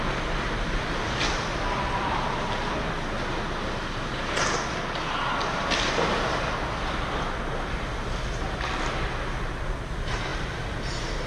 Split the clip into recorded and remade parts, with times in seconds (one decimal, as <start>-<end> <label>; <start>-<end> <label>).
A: 0.0-11.3 recorded